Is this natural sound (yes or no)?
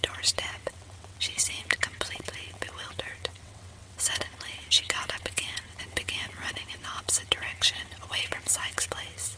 no